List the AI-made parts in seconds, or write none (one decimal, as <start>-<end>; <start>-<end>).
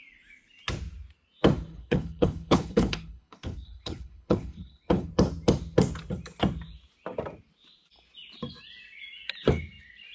1.7-5.1